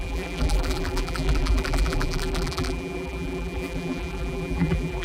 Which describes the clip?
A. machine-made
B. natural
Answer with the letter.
A